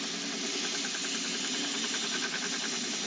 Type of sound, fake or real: real